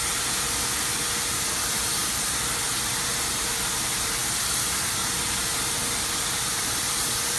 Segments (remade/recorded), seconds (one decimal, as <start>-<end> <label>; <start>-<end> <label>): 0.0-7.4 recorded